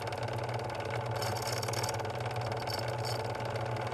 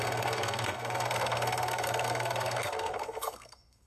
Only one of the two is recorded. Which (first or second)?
first